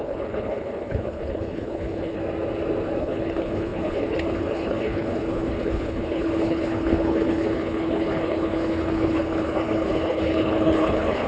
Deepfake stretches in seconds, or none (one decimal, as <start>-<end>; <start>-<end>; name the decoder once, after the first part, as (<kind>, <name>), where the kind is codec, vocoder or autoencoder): 0.0-2.2 (codec, HILCodec); 3.0-11.3